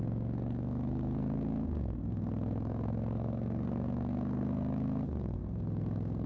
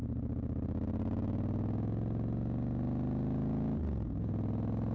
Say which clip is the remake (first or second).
first